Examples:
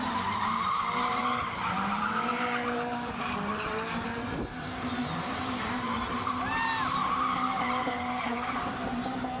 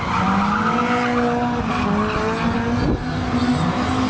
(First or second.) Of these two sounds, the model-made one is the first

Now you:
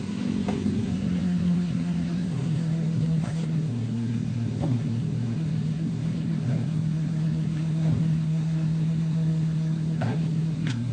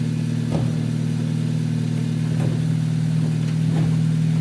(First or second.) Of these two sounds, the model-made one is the first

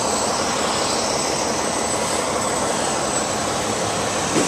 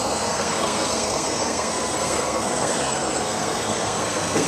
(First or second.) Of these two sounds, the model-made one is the second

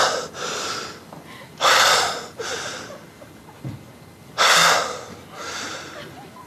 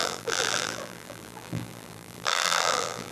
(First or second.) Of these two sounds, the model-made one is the second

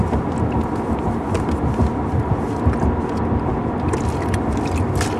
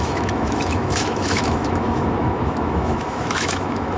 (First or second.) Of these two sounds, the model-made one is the second